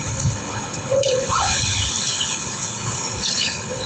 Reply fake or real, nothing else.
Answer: fake